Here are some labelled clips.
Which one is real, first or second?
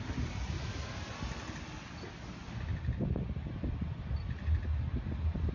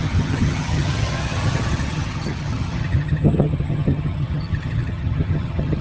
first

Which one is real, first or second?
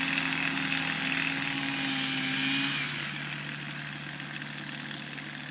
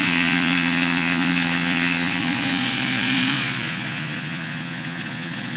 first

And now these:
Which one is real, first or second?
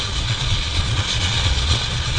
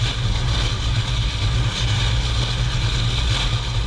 second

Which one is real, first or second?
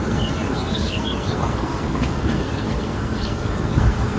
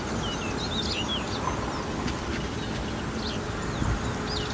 second